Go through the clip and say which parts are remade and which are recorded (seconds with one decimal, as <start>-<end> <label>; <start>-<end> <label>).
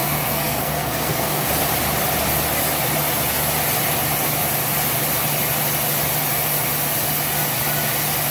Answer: 0.0-1.5 remade; 1.5-8.3 recorded